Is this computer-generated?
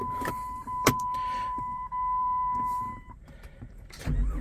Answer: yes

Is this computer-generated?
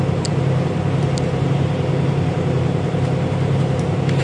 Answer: yes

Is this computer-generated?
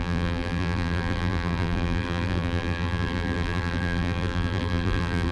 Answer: yes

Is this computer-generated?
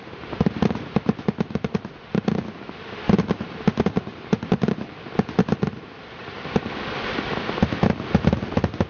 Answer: yes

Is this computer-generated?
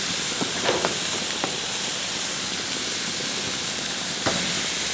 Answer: no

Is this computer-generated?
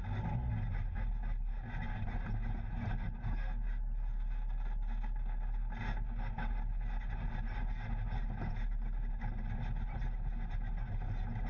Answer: no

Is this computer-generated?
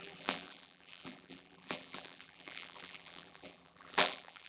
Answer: yes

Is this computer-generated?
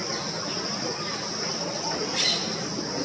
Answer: no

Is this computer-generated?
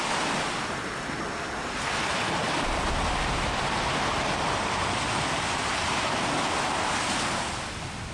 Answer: no